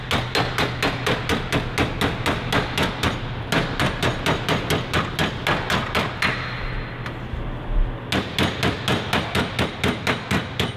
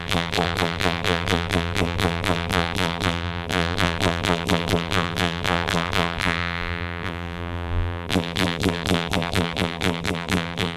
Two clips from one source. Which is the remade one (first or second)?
second